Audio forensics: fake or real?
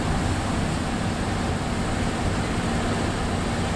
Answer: real